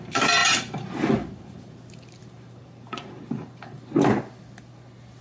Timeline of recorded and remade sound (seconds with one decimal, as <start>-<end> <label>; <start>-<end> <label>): 0.0-0.4 recorded; 0.4-1.1 remade; 1.1-2.2 recorded; 2.2-4.2 remade; 4.2-5.2 recorded

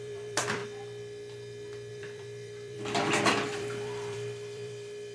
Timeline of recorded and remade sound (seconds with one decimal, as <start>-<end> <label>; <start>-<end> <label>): 0.0-0.6 remade; 0.6-1.9 recorded; 1.9-5.1 remade

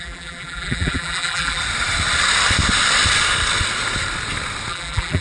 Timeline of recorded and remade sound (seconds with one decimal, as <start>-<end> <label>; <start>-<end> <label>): 0.0-1.6 remade; 1.6-4.7 recorded; 4.7-5.2 remade

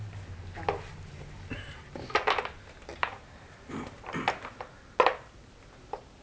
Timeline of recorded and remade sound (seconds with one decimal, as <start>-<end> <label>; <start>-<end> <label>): 0.0-0.9 recorded; 0.9-1.7 remade; 1.7-2.9 recorded; 2.9-3.7 remade; 3.7-6.2 recorded

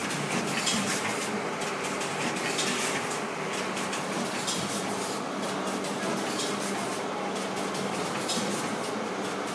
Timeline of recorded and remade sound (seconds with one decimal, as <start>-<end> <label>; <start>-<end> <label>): 0.0-9.5 recorded

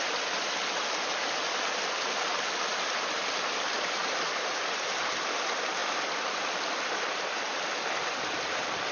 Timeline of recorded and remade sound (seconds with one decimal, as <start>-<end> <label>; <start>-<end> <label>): 0.0-2.7 recorded; 2.7-4.1 remade; 4.1-5.8 recorded; 5.8-7.1 remade; 7.1-8.9 recorded

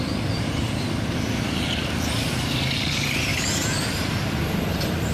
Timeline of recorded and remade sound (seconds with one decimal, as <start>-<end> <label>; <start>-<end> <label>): 0.0-3.3 recorded; 3.3-4.4 remade; 4.4-5.1 recorded